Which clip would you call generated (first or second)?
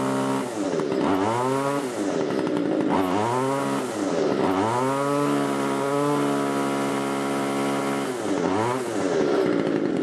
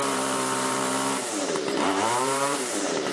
second